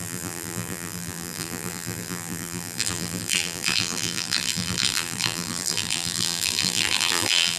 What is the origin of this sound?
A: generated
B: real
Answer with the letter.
A